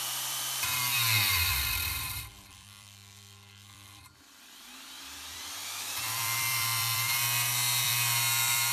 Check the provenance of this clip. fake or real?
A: fake